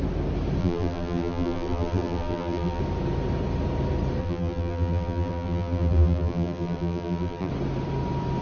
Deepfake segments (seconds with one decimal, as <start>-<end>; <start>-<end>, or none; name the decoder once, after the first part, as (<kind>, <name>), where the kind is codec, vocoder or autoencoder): 0.6-2.8 (vocoder, BigVGAN v2); 4.2-7.5